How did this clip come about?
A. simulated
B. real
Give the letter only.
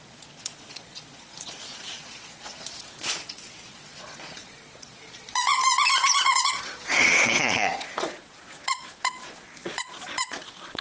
A